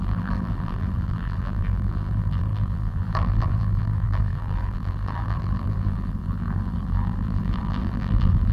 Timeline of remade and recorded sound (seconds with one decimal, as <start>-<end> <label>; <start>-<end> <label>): 0.0-8.5 remade